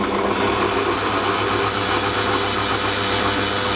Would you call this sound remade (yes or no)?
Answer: no